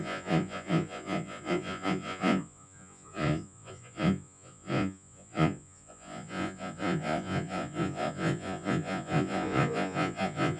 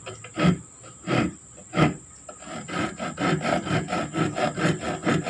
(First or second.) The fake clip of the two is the first